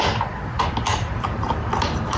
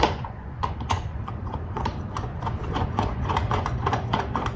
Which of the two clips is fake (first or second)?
second